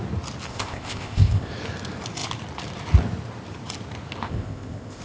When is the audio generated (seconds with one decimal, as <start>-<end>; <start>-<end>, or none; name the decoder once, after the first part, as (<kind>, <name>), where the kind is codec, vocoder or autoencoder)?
0.5-1.5 (codec, ZipCodec); 4.2-5.0